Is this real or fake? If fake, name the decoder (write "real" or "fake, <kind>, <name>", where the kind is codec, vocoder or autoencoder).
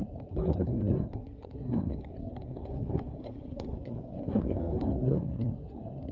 fake, codec, SNAC